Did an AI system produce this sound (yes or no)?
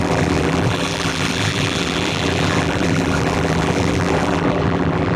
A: yes